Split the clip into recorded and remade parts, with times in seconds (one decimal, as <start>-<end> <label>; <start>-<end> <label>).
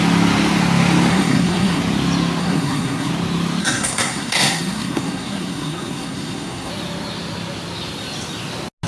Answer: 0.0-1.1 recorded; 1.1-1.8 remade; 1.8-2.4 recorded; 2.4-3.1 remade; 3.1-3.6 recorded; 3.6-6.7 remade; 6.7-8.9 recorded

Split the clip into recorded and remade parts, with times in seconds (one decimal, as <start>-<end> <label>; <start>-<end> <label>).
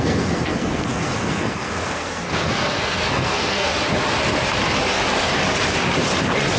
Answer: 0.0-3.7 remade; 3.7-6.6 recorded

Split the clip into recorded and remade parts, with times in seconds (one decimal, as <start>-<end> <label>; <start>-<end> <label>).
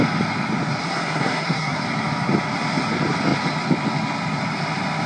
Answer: 0.0-0.8 recorded; 0.8-1.8 remade; 1.8-5.1 recorded